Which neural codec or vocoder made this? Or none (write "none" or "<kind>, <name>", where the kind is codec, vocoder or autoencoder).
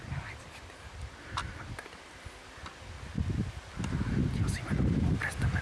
none